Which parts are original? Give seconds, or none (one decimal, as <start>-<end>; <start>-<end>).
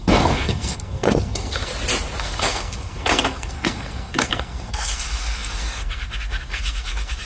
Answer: 1.7-2.2